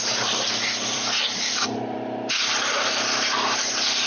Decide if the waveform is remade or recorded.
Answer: remade